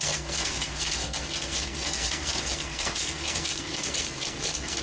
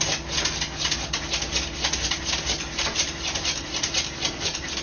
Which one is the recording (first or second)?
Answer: second